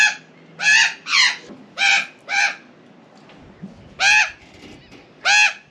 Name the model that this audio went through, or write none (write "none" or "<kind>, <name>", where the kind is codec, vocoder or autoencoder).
none